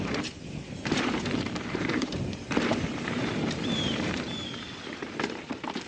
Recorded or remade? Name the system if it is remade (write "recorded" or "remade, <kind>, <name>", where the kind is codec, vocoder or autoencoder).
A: remade, vocoder, BigVGAN v2